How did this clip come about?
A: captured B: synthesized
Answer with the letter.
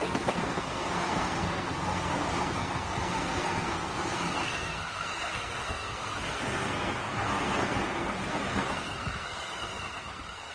B